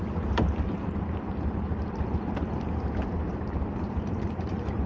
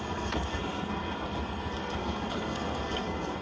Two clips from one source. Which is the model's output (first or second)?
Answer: second